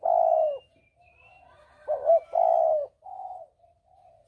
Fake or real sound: real